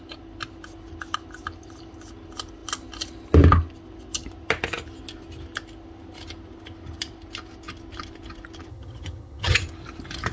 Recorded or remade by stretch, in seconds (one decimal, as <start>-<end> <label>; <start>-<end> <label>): 0.0-8.7 recorded; 8.7-9.6 remade; 9.6-10.3 recorded

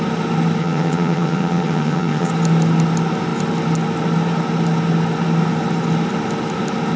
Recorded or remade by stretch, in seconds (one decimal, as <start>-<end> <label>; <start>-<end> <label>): 0.0-0.6 recorded; 0.6-2.3 remade; 2.3-7.0 recorded

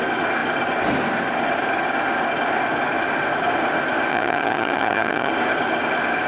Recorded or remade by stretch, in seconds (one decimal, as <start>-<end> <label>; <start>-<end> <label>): 0.0-4.1 recorded; 4.1-5.3 remade; 5.3-6.3 recorded

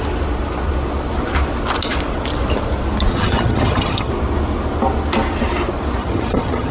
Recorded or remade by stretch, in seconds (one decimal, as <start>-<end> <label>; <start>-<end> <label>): 0.0-3.1 recorded; 3.1-4.1 remade; 4.1-6.0 recorded; 6.0-6.7 remade